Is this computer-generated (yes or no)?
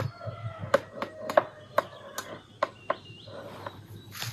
no